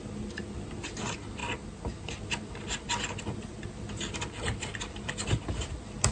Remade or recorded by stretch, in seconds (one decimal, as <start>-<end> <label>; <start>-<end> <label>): 0.0-6.1 recorded